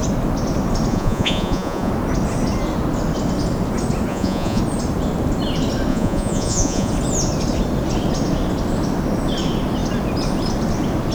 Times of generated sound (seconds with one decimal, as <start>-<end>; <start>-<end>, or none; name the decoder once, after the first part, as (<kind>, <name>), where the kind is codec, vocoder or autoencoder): 0.9-1.9 (vocoder, Vocos); 4.1-4.6; 5.9-6.9